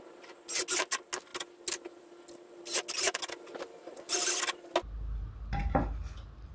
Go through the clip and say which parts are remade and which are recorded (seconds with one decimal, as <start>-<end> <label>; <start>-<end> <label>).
0.0-6.5 recorded

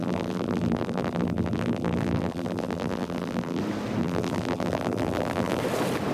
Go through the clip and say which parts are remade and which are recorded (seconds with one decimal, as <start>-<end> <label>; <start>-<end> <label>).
0.0-3.6 remade; 3.6-4.0 recorded; 4.0-5.6 remade; 5.6-6.1 recorded

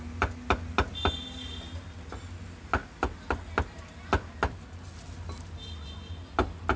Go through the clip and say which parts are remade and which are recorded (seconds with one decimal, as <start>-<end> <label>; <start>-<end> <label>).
0.0-6.8 recorded

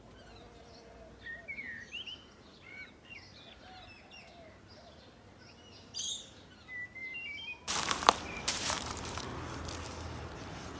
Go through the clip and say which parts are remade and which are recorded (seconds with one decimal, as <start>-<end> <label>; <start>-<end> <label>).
0.0-2.5 recorded; 2.5-3.2 remade; 3.2-7.0 recorded; 7.0-9.2 remade; 9.2-10.8 recorded

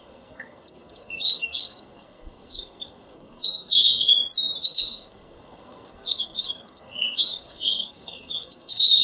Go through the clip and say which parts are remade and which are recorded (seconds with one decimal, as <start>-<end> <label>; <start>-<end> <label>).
0.0-4.1 remade; 4.1-4.6 recorded; 4.6-9.0 remade